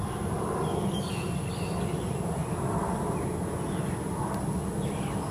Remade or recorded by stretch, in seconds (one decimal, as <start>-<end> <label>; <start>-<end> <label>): 0.0-2.4 remade; 2.4-4.4 recorded; 4.4-5.3 remade